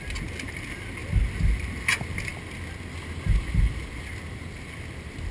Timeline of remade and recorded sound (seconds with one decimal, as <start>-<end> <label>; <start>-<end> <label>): 0.0-5.3 recorded